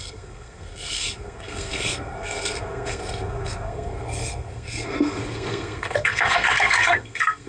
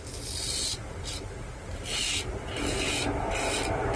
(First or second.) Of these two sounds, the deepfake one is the first